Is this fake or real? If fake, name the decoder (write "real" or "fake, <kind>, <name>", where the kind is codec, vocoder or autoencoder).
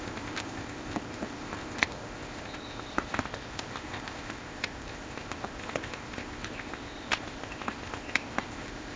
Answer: fake, codec, ZipCodec